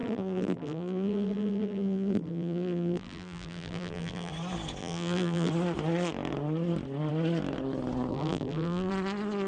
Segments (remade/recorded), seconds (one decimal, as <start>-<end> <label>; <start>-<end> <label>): 0.0-4.3 remade; 4.3-4.8 recorded; 4.8-5.5 remade; 5.5-8.1 recorded; 8.1-8.9 remade; 8.9-9.5 recorded